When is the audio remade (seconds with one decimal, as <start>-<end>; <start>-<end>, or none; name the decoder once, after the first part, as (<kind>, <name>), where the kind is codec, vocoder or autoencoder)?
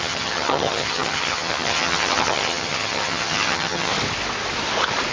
0.0-3.9 (vocoder, HiFi-GAN)